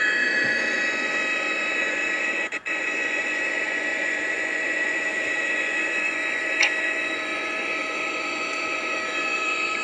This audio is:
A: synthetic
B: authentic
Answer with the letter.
A